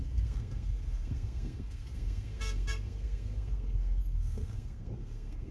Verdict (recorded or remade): remade